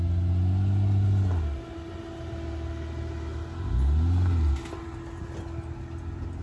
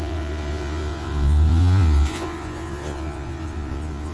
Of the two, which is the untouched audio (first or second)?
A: first